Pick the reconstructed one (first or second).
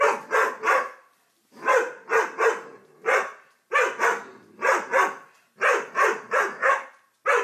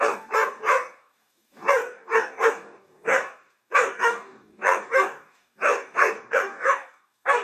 second